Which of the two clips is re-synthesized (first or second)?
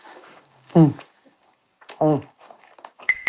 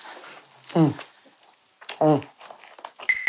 first